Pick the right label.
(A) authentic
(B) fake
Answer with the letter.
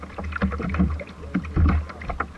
A